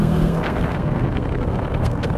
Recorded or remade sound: remade